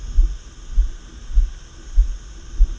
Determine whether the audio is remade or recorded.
recorded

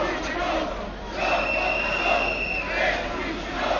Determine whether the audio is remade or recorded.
recorded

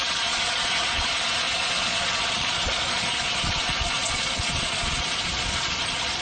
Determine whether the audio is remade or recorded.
remade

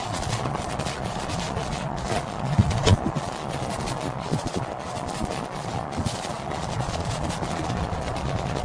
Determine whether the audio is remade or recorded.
remade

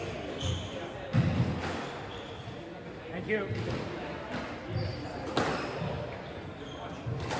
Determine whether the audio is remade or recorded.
recorded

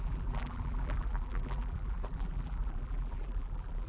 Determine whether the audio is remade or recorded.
remade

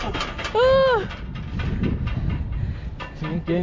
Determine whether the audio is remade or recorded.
recorded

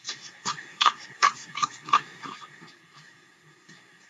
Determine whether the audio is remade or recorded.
remade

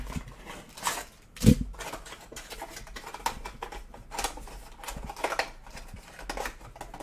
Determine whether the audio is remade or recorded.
recorded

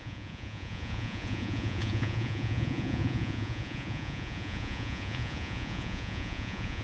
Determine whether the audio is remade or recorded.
remade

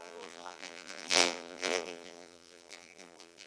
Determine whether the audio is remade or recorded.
remade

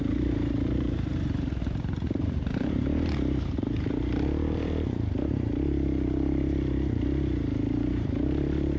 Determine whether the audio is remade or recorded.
remade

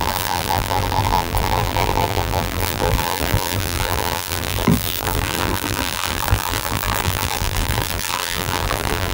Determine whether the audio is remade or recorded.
remade